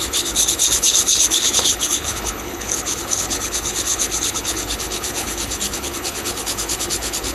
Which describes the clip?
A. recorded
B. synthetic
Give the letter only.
B